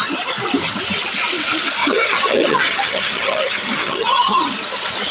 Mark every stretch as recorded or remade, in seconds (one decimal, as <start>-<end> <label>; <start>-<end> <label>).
0.0-1.8 recorded; 1.8-4.5 remade; 4.5-5.1 recorded